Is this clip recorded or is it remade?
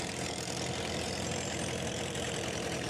remade